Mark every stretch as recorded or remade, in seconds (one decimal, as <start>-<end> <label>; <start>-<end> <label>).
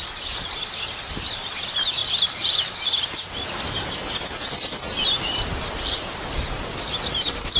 0.0-7.6 recorded